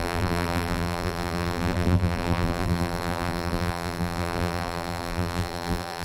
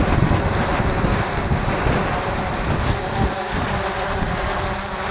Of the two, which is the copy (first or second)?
first